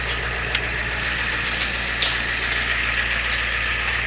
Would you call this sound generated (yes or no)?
no